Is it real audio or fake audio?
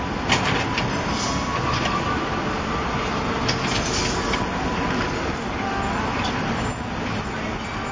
real